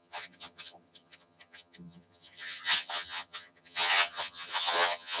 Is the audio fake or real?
fake